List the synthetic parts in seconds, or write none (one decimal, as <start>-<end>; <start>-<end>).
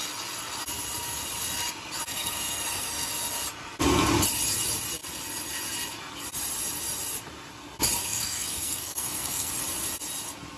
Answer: 2.1-3.1; 8.0-9.5